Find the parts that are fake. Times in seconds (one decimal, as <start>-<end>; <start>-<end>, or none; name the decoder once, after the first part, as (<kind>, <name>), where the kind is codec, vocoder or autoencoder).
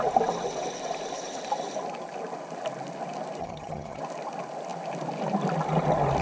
3.4-4.0 (vocoder, HiFi-GAN)